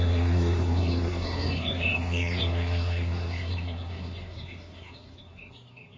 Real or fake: fake